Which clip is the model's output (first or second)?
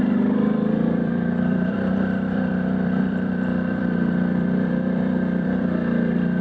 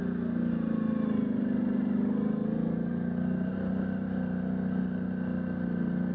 first